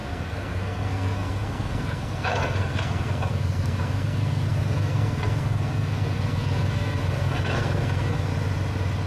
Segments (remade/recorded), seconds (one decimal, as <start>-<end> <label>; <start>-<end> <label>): 0.0-8.3 remade; 8.3-9.1 recorded